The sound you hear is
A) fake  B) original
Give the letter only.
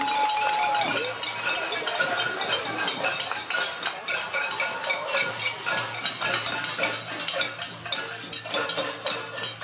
B